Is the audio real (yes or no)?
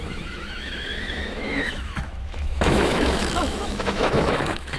no